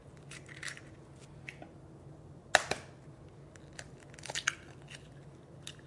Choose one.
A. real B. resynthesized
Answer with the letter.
A